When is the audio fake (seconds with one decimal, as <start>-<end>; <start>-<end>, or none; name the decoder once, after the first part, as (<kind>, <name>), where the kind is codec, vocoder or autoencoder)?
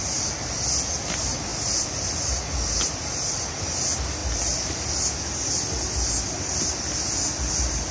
1.5-2.1 (vocoder, BigVGAN v2)